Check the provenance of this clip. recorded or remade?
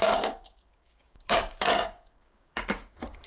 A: remade